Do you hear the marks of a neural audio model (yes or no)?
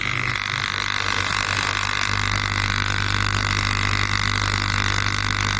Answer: yes